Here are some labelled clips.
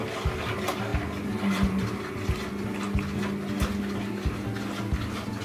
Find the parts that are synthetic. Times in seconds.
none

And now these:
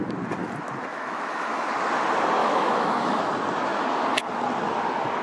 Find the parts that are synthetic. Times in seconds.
0.9-1.7 (autoencoder, DAC-VAE); 2.4-3.2

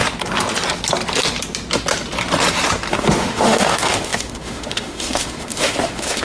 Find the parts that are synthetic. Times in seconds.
2.9-6.2 (autoencoder, DAC-VAE)

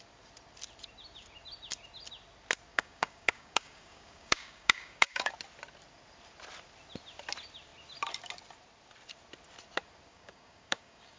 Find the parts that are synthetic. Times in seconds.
2.7-5.3 (codec, DAC); 10.1-11.2

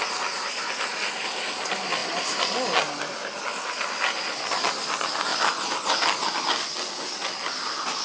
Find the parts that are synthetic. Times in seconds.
none

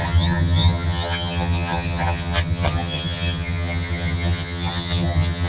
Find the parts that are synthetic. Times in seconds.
0.0-5.5 (vocoder, HiFi-GAN)